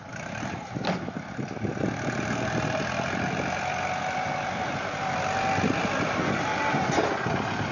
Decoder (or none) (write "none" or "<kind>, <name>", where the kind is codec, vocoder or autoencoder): none